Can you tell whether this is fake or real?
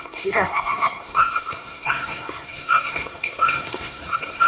fake